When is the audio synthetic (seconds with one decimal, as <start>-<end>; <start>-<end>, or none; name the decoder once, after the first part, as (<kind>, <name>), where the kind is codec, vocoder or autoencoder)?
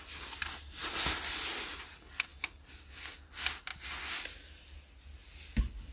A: none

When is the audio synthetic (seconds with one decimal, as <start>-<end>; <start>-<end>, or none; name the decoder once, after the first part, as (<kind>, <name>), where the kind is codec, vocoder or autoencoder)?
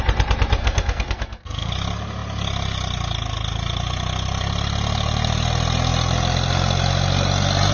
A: 0.6-1.7 (codec, SNAC)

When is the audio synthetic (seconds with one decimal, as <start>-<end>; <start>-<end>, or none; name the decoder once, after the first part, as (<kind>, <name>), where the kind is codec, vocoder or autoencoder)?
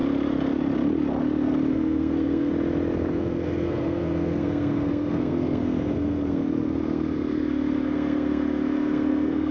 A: 1.7-2.5 (codec, SNAC); 3.1-9.5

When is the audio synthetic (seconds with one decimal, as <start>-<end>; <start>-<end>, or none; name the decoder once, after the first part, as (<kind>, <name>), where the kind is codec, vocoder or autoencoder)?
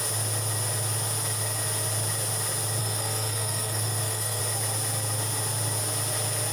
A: 2.8-4.4 (codec, SNAC)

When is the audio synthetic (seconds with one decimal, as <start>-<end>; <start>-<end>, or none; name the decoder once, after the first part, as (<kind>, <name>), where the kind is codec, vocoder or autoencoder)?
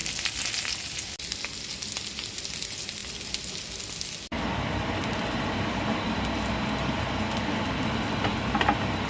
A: none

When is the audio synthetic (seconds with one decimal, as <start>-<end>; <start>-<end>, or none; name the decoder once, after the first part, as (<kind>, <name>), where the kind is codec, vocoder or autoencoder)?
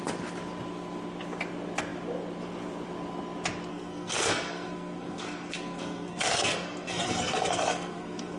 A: 3.7-8.4 (codec, SNAC)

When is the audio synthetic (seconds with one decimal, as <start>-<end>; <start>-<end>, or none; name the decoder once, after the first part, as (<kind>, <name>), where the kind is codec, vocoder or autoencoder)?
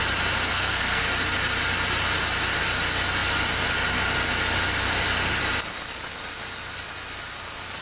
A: 0.5-1.0 (codec, SNAC)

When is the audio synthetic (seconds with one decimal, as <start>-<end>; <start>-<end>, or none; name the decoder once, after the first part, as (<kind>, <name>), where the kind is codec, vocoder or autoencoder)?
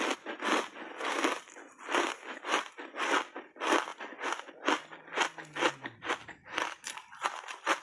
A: none